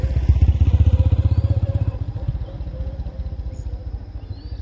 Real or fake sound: real